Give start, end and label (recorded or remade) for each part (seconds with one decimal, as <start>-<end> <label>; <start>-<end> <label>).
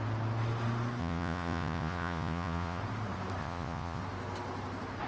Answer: 0.0-1.0 recorded; 1.0-2.8 remade; 2.8-3.4 recorded; 3.4-4.0 remade; 4.0-5.1 recorded